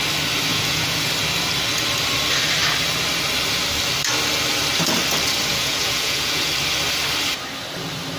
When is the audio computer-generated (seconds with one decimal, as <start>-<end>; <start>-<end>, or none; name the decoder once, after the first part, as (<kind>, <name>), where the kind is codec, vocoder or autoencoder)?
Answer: 0.5-1.1 (vocoder, Vocos); 5.5-6.5